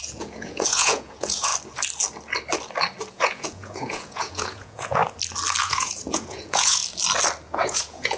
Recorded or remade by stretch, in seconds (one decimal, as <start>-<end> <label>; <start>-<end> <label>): 0.0-1.5 remade; 1.5-3.1 recorded; 3.1-5.0 remade; 5.0-5.6 recorded; 5.6-6.8 remade; 6.8-7.5 recorded; 7.5-8.2 remade